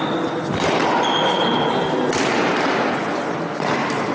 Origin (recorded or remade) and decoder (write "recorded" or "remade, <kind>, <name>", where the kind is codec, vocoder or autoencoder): recorded